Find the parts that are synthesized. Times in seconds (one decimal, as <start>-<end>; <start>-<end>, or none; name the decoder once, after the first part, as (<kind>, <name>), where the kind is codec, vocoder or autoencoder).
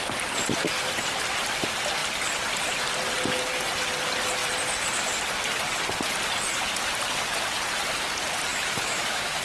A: 8.5-9.4 (autoencoder, DAC-VAE)